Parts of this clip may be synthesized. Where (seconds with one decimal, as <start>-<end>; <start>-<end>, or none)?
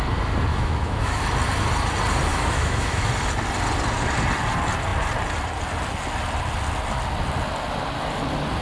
0.5-1.2; 2.3-3.1